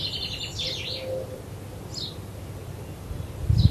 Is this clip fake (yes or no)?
no